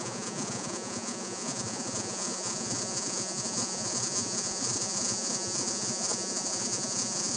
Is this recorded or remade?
remade